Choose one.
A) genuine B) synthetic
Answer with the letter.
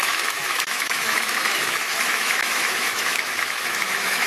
B